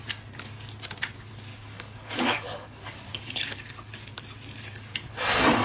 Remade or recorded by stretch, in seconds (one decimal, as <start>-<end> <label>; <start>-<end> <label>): 0.0-1.5 recorded; 1.5-3.9 remade; 3.9-5.6 recorded